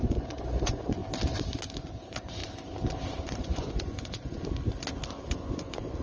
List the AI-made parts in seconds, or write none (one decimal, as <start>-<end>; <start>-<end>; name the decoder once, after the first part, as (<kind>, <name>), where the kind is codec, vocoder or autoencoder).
0.0-1.0 (vocoder, Vocos); 1.8-2.4; 3.2-4.3; 5.3-6.0